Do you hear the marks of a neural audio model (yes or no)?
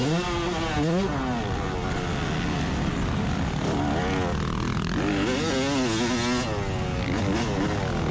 no